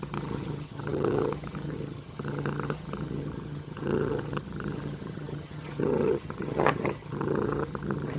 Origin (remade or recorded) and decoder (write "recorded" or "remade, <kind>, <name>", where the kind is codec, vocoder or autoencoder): remade, vocoder, HiFi-GAN